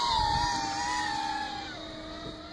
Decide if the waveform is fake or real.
real